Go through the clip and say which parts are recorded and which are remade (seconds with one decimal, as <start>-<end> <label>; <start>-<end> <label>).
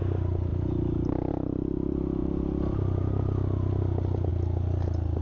0.0-5.2 recorded